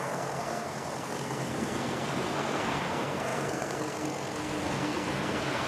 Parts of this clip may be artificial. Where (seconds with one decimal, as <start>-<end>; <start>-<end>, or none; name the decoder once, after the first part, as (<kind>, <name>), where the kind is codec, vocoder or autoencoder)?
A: 0.0-5.7 (codec, SNAC)